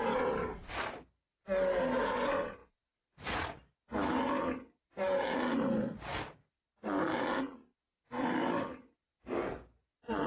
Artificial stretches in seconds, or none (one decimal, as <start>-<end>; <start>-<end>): none